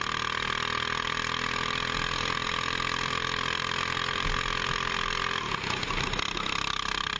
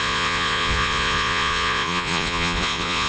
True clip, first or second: first